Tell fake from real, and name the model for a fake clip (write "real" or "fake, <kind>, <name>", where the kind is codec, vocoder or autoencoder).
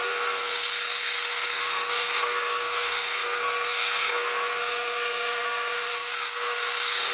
fake, codec, SNAC